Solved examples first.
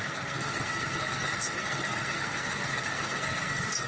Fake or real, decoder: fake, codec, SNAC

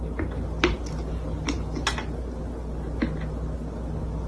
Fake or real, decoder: real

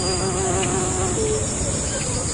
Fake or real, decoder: real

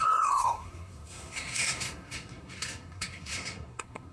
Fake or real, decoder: fake, codec, SNAC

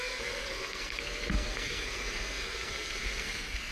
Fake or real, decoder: fake, codec, SNAC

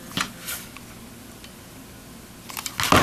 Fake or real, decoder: real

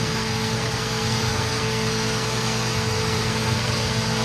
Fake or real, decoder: fake, codec, SNAC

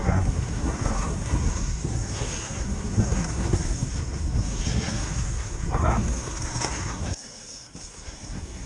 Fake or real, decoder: fake, codec, SNAC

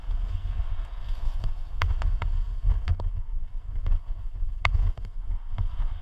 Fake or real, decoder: fake, codec, SNAC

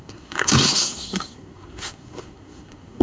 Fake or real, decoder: fake, codec, SNAC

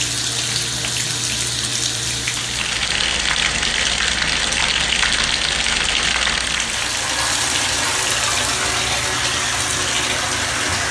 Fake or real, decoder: real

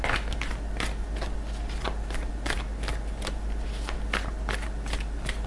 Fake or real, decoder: real